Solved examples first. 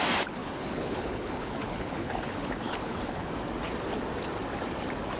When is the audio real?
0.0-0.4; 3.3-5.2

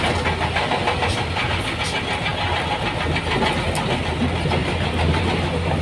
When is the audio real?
0.0-5.8

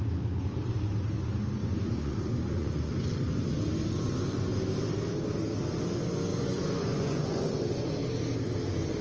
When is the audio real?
0.0-1.6; 2.9-6.3; 7.9-9.0